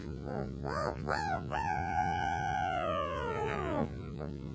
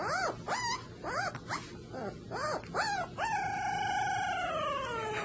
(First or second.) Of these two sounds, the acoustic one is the second